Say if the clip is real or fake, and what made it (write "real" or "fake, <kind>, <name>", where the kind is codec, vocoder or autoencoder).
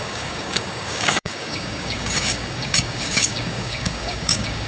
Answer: fake, codec, DAC